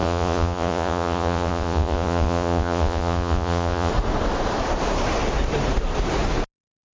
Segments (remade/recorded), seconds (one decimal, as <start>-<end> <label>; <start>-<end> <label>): 0.0-3.9 remade; 3.9-6.9 recorded